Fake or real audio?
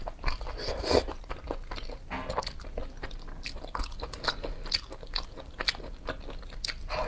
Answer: real